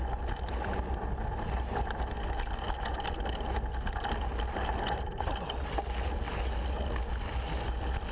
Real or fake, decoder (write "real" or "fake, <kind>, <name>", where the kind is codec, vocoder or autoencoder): real